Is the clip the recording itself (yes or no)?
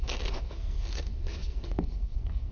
no